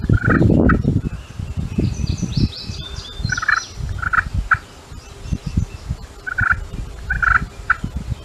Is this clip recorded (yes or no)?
yes